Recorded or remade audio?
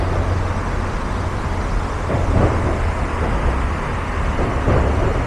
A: recorded